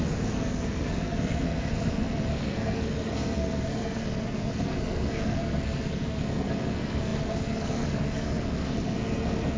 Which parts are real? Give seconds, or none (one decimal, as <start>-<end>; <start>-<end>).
none